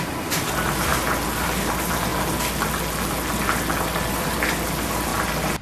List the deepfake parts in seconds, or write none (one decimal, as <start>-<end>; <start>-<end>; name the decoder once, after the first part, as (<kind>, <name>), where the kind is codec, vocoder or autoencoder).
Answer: 0.0-2.1 (vocoder, BigVGAN v2); 4.1-5.1